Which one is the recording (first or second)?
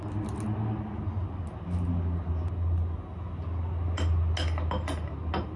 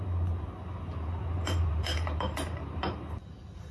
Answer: first